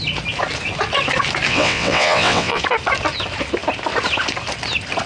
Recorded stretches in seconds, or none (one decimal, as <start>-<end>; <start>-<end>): 0.0-1.5; 2.6-5.1